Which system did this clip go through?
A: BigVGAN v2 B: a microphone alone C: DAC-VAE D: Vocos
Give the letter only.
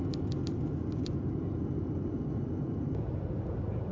B